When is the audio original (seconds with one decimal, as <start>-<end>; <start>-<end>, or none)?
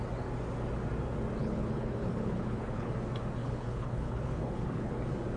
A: 0.0-1.4; 2.9-3.4; 5.0-5.4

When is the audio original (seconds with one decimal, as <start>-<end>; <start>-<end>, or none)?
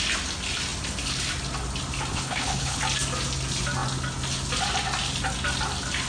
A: 0.0-2.1; 2.8-6.1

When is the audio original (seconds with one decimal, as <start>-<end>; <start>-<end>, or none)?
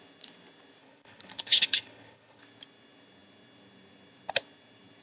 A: 0.0-0.8; 2.4-5.0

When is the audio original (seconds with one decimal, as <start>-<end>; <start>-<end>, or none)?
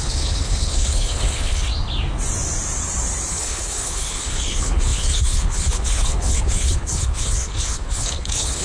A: 1.7-3.3